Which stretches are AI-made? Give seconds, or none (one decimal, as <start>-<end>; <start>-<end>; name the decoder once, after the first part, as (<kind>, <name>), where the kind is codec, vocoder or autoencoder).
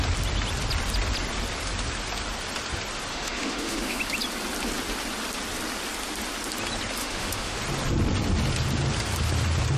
3.1-4.0 (autoencoder, DAC-VAE); 7.0-7.6